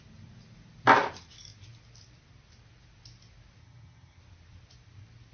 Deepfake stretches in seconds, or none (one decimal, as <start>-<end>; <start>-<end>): 3.6-4.2